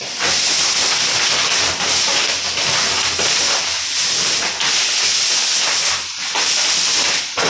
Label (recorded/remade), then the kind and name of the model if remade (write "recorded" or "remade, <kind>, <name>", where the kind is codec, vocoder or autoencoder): recorded